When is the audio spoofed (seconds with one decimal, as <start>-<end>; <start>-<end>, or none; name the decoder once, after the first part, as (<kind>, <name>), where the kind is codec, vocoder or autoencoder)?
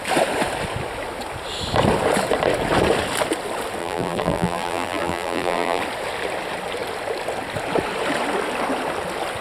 3.8-5.8 (vocoder, BigVGAN v2)